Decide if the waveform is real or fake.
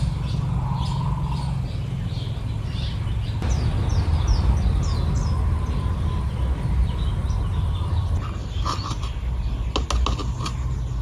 real